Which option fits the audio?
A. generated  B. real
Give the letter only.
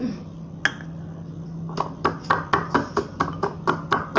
B